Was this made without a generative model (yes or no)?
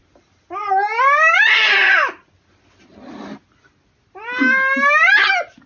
yes